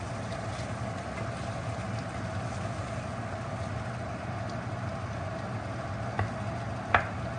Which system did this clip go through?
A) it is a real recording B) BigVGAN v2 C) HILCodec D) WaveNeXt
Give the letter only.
A